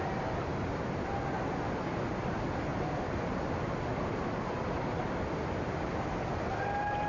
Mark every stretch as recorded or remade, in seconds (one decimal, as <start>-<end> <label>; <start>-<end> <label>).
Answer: 0.0-2.7 recorded; 2.7-3.2 remade; 3.2-7.1 recorded